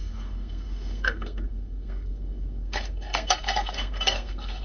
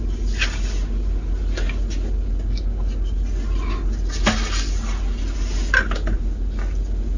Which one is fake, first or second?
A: first